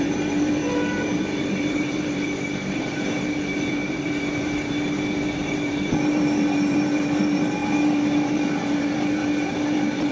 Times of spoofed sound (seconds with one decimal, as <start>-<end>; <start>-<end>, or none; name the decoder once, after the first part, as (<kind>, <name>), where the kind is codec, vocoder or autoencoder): 0.0-10.1 (vocoder, BigVGAN v2)